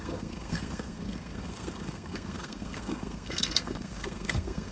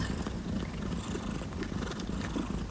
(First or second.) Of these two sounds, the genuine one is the second